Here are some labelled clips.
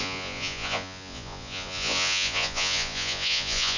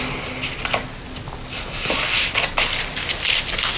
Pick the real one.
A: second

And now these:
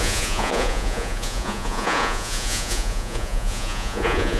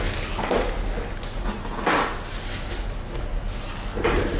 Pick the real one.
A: second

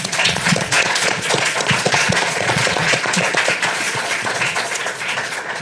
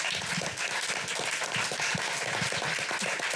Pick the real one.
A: second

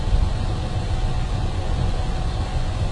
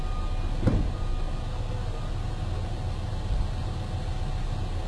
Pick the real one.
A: second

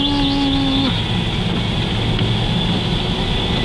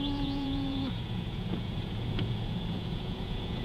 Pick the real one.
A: first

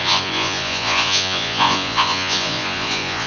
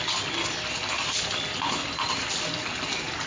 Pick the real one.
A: second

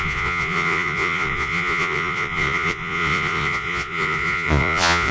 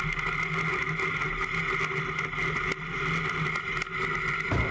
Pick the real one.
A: second